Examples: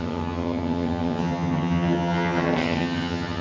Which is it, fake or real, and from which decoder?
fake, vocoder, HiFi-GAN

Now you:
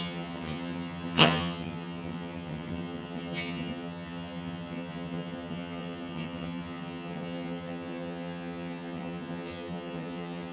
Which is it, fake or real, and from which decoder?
fake, vocoder, HiFi-GAN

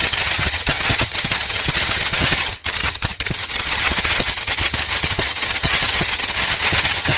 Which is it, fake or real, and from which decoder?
fake, vocoder, HiFi-GAN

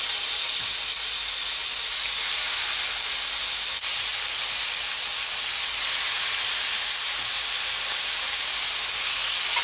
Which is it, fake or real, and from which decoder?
real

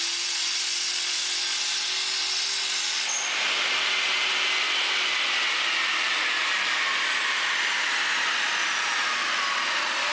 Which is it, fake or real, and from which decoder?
real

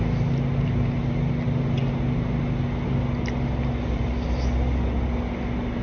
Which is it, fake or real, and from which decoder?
real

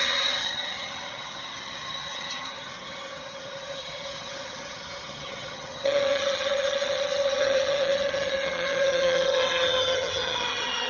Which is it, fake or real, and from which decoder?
fake, vocoder, HiFi-GAN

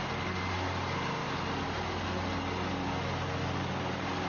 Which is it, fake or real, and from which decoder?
real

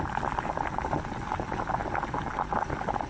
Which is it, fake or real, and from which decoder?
real